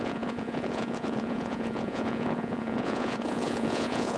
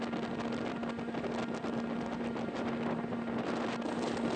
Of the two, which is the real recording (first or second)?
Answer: second